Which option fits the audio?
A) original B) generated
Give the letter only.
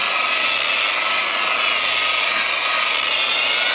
A